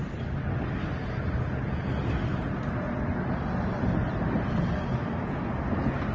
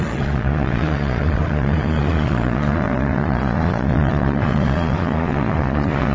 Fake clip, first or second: second